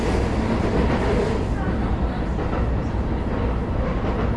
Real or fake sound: real